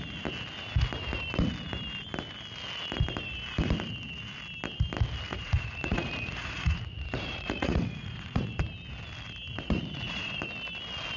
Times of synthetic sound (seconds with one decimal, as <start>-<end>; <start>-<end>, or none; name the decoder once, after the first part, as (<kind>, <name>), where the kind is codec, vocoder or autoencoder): 5.3-8.6 (vocoder, Vocos); 9.5-10.4